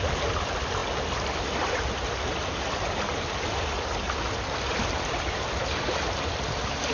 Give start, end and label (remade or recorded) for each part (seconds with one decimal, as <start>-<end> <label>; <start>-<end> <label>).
0.0-6.9 recorded